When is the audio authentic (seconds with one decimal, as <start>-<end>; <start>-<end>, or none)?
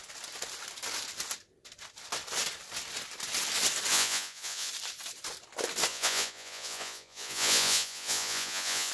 0.0-3.9; 4.7-5.9